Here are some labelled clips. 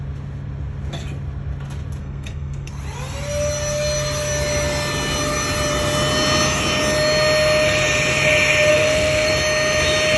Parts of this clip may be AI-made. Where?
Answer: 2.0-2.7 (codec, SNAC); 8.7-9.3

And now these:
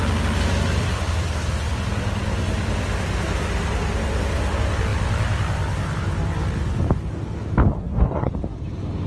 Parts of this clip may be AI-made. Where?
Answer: 7.7-8.3 (codec, SNAC)

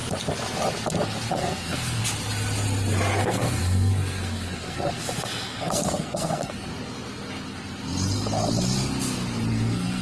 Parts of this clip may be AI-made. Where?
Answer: 1.3-2.0 (codec, SNAC); 3.2-6.7; 9.5-10.0